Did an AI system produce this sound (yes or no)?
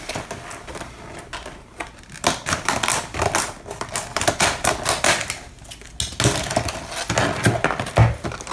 no